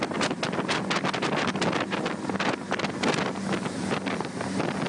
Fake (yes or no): no